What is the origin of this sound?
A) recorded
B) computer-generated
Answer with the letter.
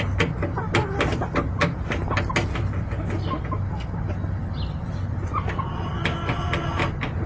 A